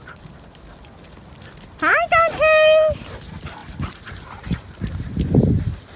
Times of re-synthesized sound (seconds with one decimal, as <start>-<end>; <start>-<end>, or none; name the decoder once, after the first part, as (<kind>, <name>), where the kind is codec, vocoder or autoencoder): 3.6-4.1 (vocoder, BigVGAN v2)